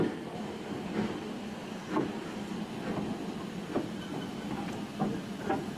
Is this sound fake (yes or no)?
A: no